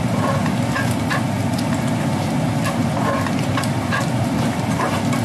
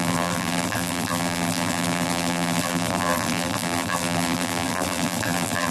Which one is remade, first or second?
second